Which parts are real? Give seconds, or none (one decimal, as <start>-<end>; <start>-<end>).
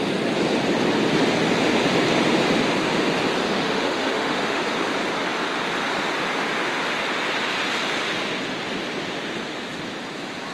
0.0-3.4; 4.6-10.5